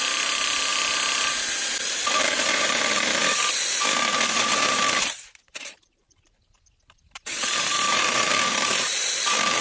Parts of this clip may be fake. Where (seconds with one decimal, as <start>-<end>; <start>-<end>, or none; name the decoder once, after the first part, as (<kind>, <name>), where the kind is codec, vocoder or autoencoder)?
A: 0.0-0.7 (vocoder, BigVGAN v2); 2.0-9.6